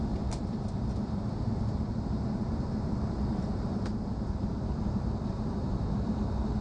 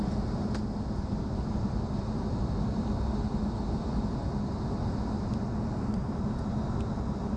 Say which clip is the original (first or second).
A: second